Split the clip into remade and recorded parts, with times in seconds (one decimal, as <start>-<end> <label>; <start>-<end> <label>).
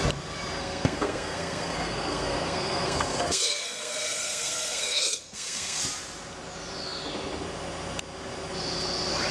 0.0-0.6 recorded; 0.6-5.8 remade; 5.8-9.3 recorded